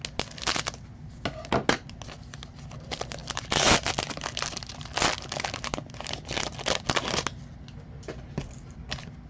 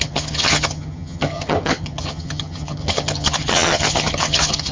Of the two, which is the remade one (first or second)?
second